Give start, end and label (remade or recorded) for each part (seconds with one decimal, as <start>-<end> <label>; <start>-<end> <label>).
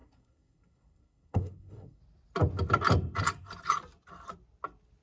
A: 0.0-2.0 remade; 2.0-5.0 recorded